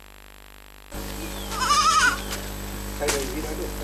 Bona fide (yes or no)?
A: yes